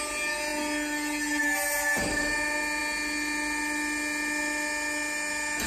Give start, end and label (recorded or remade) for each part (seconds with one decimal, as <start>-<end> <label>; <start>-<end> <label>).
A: 0.0-5.7 recorded